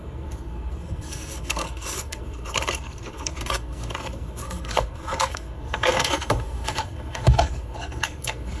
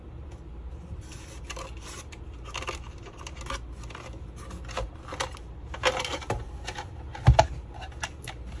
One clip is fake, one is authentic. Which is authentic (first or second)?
second